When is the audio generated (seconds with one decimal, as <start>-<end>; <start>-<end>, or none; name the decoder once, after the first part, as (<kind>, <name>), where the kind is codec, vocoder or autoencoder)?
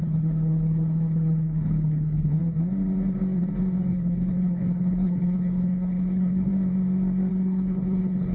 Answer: 0.0-2.4 (codec, HILCodec); 3.9-6.5; 7.3-8.3